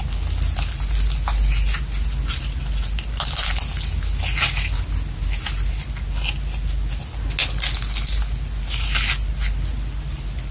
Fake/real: real